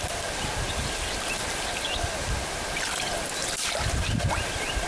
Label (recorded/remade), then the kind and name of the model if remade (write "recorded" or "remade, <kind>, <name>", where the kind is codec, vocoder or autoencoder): recorded